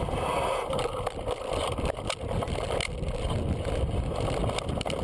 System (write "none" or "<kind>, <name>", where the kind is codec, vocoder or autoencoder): none